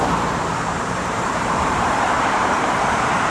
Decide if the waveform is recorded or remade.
remade